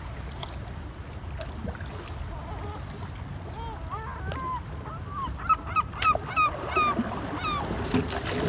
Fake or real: real